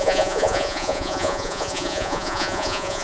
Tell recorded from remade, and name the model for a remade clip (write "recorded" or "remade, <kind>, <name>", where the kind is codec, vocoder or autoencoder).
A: remade, vocoder, Vocos